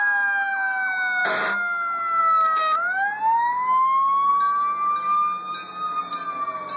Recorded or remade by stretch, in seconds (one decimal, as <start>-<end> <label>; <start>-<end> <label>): 0.0-6.8 recorded

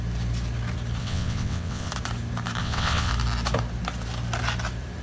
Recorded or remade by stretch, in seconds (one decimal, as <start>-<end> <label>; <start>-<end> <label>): 0.0-1.0 recorded; 1.0-1.9 remade; 1.9-2.6 recorded; 2.6-3.1 remade; 3.1-5.0 recorded